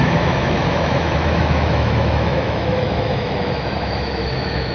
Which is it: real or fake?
fake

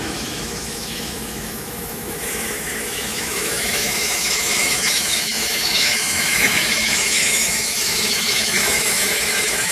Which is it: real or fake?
fake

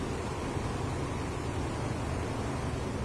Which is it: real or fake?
real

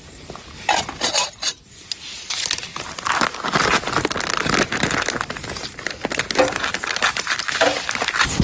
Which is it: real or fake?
real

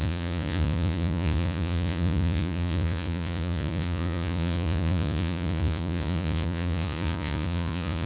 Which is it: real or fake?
fake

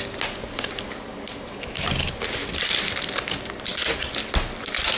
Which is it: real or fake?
real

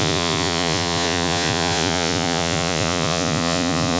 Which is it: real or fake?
fake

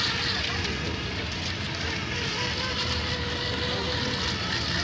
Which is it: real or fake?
real